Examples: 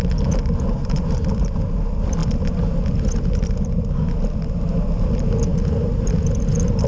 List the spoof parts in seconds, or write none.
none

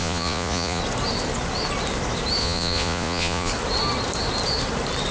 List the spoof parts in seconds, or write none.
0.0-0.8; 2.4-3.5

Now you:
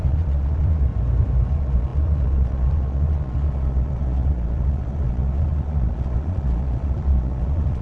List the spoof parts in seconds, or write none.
0.0-0.9; 1.5-7.8